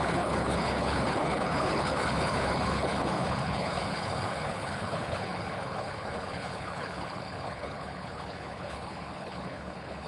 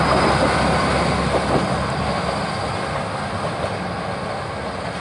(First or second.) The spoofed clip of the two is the first